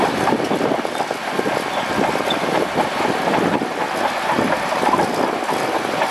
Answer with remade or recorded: recorded